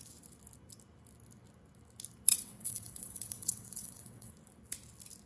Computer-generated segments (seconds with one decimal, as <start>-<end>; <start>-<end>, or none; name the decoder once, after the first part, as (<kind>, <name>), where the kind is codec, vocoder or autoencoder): 2.3-4.3 (vocoder, WaveNeXt)